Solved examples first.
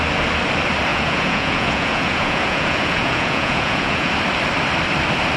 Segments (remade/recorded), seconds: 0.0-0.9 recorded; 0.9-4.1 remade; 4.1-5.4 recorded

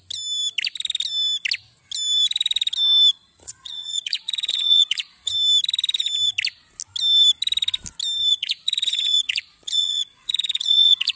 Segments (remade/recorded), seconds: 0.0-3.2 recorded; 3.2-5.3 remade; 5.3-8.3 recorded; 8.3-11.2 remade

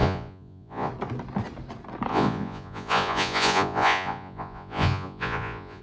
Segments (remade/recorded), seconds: 0.0-0.9 remade; 0.9-2.1 recorded; 2.1-5.8 remade